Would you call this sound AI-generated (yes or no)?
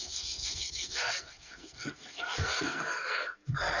yes